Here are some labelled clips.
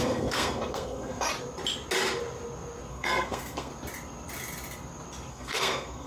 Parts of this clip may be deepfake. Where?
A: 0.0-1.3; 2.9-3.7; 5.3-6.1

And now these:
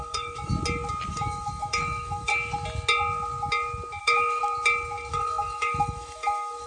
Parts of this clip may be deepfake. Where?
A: 0.0-0.5; 1.1-2.3; 4.0-4.4; 5.1-6.7

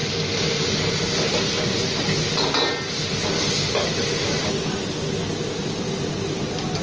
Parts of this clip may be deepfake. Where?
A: none

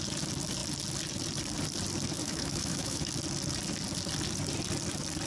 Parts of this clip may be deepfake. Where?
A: 2.2-3.1

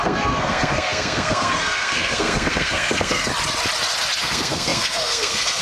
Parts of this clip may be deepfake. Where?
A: 0.0-3.3; 4.2-5.6

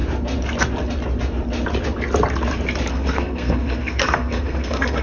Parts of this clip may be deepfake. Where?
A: 2.9-5.0